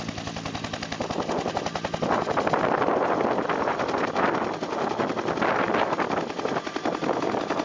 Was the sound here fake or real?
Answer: real